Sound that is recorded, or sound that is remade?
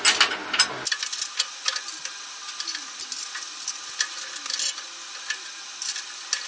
recorded